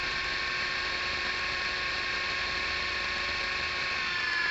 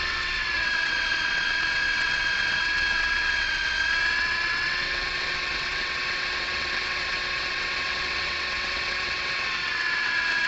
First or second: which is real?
first